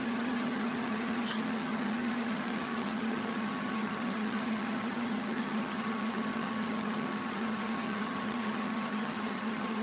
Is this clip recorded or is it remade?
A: remade